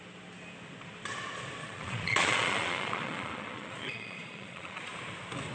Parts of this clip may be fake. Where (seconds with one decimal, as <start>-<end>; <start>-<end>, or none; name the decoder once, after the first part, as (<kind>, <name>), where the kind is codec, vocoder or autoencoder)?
1.6-4.9 (vocoder, Vocos)